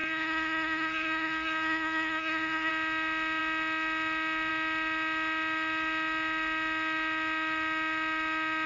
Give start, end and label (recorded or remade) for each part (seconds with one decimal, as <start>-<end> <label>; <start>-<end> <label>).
0.0-2.7 remade; 2.7-8.7 recorded